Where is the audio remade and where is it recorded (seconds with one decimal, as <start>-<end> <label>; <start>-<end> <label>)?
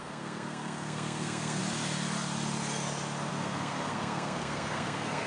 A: 0.0-1.6 remade; 1.6-3.3 recorded; 3.3-5.3 remade